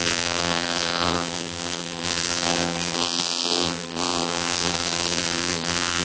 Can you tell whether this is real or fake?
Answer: fake